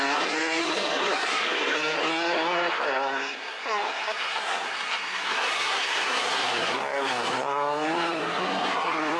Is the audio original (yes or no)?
no